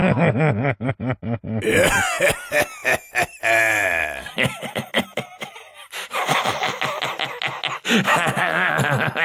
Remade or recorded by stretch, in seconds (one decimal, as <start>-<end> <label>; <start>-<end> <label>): 0.0-0.9 remade; 0.9-8.1 recorded; 8.1-8.7 remade; 8.7-9.2 recorded